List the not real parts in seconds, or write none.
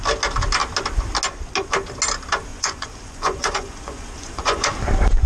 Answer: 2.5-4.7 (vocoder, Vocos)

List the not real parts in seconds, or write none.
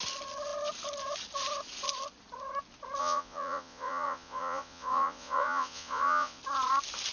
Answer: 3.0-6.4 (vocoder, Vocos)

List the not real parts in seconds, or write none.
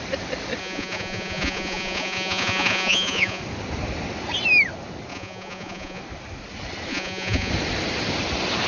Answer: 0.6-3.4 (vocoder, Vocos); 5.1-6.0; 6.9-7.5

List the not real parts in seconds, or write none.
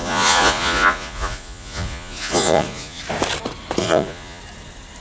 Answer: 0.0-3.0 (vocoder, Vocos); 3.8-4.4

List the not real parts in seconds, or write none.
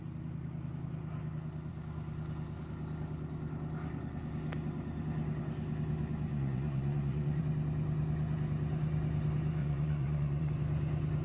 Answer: 6.3-7.4 (vocoder, Vocos); 9.6-10.5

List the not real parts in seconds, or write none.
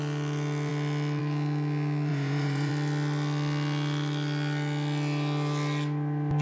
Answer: 2.1-2.7 (vocoder, Vocos)